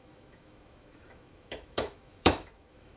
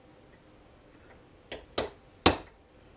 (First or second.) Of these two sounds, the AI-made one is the first